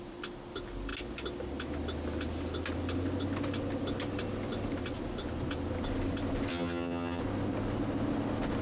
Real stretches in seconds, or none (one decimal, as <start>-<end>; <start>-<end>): 0.0-6.5; 7.2-8.6